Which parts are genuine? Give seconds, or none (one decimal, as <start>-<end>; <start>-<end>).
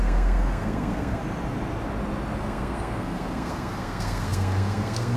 1.2-2.4